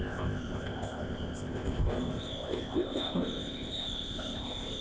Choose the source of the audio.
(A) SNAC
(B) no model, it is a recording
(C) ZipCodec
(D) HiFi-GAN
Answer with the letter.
C